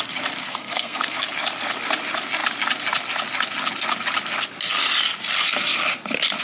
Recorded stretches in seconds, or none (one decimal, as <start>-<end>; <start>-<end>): 0.0-0.4; 1.1-6.4